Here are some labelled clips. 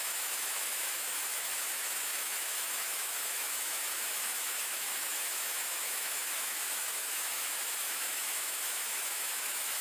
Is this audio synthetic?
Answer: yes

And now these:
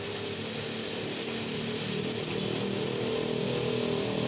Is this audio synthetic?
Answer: no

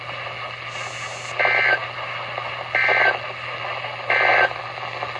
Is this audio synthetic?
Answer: no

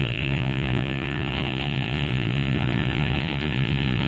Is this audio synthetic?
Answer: yes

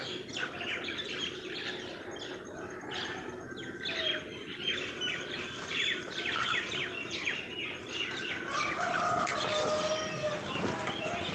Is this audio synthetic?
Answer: no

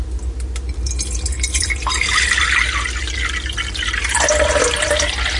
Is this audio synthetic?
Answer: no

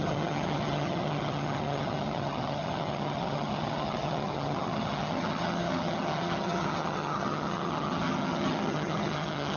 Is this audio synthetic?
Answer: yes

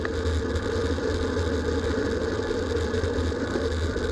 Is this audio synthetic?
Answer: no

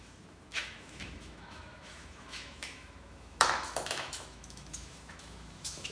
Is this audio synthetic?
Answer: yes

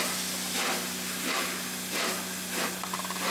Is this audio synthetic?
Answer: no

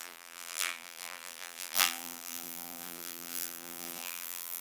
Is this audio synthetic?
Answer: yes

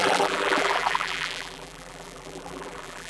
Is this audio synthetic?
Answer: yes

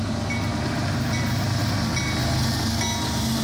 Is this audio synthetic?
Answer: no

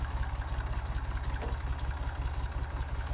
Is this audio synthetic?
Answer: yes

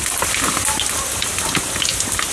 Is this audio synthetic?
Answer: no